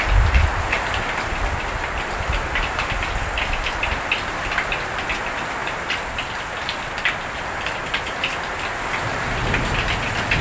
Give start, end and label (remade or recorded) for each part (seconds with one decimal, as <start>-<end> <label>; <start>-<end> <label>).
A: 0.0-5.6 recorded; 5.6-7.6 remade; 7.6-10.4 recorded

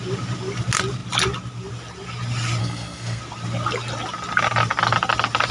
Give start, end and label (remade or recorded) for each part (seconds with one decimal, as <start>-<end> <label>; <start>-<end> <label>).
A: 0.0-2.6 recorded; 2.6-3.2 remade; 3.2-5.5 recorded

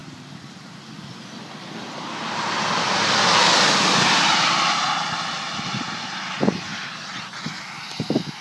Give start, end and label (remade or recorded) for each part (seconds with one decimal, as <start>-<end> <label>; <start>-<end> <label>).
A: 0.0-3.3 remade; 3.3-3.8 recorded; 3.8-5.4 remade; 5.4-6.7 recorded; 6.7-7.7 remade; 7.7-8.4 recorded

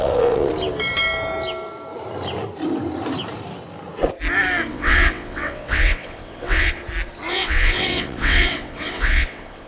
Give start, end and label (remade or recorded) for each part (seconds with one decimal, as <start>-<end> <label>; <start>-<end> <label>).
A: 0.0-0.5 remade; 0.5-4.7 recorded; 4.7-6.8 remade; 6.8-7.3 recorded; 7.3-9.7 remade

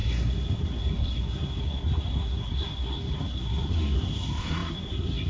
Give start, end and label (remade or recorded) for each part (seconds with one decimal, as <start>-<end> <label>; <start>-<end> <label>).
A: 0.0-5.3 remade

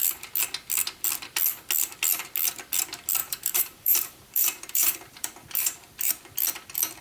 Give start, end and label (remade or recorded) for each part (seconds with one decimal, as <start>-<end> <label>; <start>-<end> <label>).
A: 0.0-3.2 recorded; 3.2-6.1 remade; 6.1-7.0 recorded

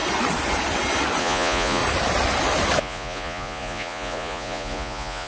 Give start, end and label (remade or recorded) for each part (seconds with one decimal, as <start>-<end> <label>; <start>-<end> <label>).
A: 0.0-1.2 recorded; 1.2-1.8 remade; 1.8-2.8 recorded; 2.8-5.3 remade